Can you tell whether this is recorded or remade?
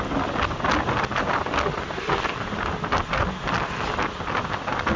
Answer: recorded